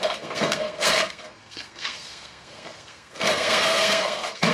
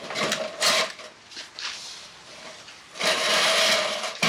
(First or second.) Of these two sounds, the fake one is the first